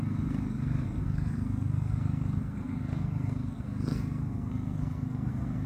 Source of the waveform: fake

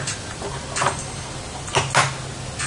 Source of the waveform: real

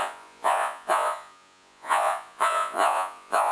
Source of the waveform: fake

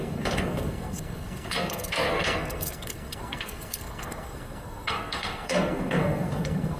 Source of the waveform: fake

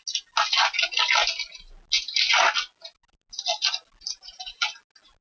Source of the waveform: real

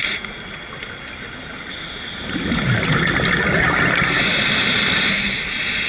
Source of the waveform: real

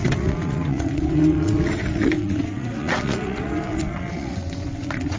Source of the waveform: fake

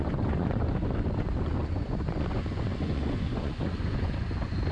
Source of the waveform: fake